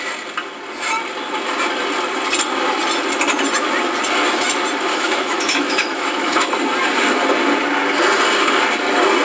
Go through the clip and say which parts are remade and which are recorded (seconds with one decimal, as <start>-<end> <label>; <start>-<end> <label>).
0.0-4.9 recorded; 4.9-6.5 remade; 6.5-9.2 recorded